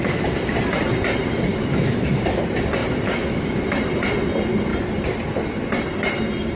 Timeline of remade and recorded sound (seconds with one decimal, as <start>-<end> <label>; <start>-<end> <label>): 0.0-1.5 recorded; 1.5-2.4 remade; 2.4-2.8 recorded; 2.8-3.6 remade; 3.6-6.6 recorded